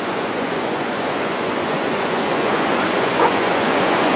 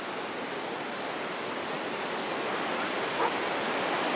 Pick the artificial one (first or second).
first